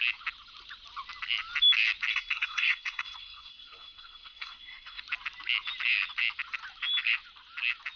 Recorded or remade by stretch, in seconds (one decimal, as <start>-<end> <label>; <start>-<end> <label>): 0.0-2.1 recorded; 2.1-5.0 remade; 5.0-8.0 recorded